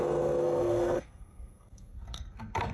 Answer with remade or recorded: remade